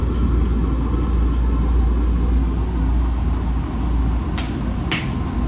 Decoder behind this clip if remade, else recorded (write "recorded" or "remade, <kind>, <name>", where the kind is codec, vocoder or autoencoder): recorded